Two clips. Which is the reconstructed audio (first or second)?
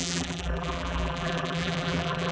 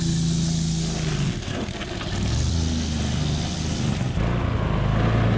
first